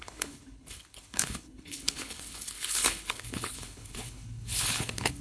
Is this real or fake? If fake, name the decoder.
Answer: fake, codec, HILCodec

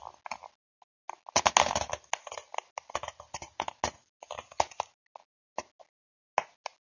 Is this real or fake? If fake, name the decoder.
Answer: real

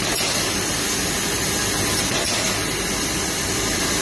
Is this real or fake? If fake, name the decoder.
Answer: real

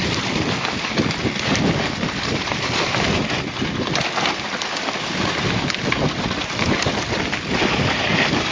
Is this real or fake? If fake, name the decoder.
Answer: fake, vocoder, BigVGAN v2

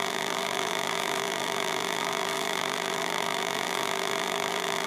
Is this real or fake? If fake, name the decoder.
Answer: fake, vocoder, BigVGAN v2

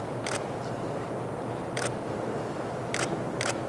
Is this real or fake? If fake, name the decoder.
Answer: real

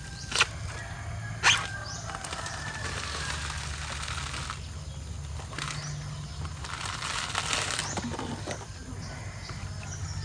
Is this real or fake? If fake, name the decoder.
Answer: real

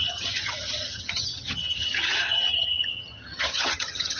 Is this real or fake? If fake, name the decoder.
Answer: fake, vocoder, HiFi-GAN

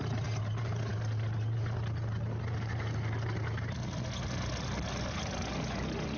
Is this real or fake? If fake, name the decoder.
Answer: real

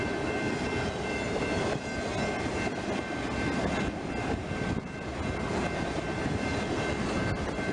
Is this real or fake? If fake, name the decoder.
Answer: real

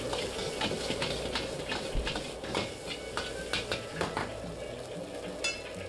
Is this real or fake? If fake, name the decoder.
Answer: real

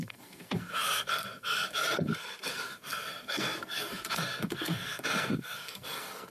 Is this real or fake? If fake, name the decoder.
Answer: fake, codec, SNAC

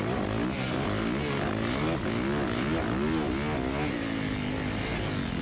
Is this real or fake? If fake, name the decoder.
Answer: real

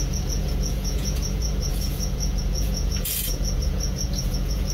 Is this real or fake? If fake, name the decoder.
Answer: fake, vocoder, Vocos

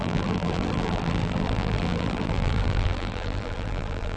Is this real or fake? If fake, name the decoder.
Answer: fake, vocoder, BigVGAN v2